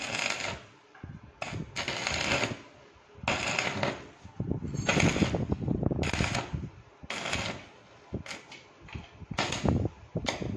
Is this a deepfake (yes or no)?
no